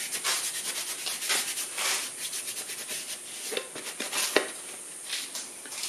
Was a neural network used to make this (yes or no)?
no